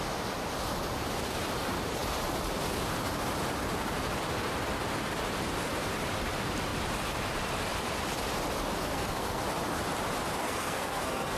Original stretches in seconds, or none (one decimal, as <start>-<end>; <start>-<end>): 0.0-8.9; 9.4-10.4